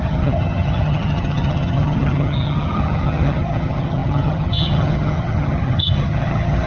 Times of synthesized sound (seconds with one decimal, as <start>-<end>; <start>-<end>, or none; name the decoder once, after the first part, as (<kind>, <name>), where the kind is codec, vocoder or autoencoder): 0.0-6.7 (vocoder, HiFi-GAN)